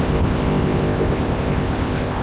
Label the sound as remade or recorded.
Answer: remade